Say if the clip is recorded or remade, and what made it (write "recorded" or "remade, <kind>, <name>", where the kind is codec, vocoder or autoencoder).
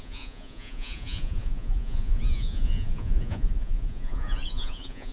remade, vocoder, Vocos